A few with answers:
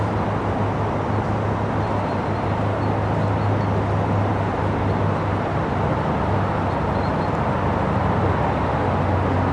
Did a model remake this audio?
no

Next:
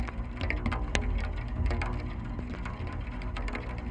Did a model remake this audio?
no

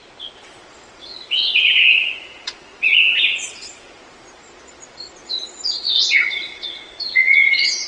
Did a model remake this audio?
yes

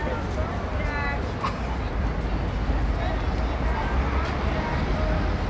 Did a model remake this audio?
no